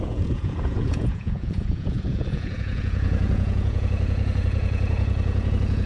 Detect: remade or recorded remade